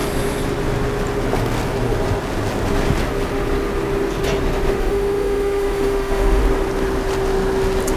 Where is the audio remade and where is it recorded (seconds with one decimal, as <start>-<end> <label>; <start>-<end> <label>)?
0.0-4.8 recorded; 4.8-6.4 remade; 6.4-8.0 recorded